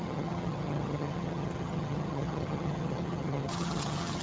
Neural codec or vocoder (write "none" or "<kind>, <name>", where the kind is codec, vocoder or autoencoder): vocoder, HiFi-GAN